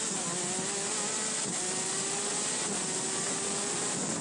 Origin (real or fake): real